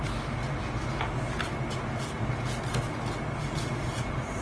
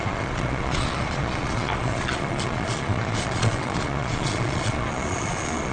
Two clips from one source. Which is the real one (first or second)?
first